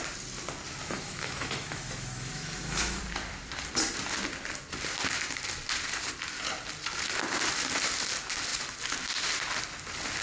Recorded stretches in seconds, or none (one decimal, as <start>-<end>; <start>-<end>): 0.0-0.8; 3.0-10.2